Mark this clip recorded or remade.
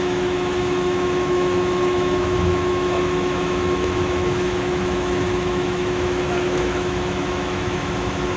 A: remade